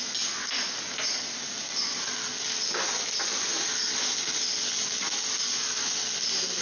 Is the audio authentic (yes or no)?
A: yes